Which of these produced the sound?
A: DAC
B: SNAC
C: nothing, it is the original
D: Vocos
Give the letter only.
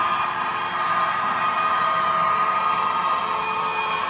C